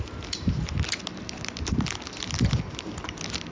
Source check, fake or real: real